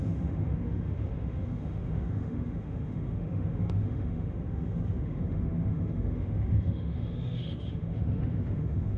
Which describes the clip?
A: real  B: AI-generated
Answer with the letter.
B